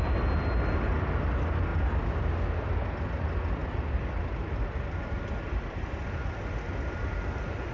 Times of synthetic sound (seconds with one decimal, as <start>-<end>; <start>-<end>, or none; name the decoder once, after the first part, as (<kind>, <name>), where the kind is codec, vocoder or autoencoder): 3.6-7.7 (vocoder, BigVGAN v2)